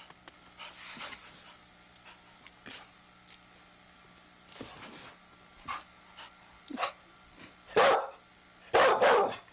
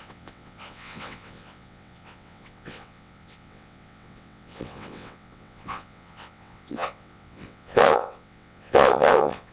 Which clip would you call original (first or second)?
first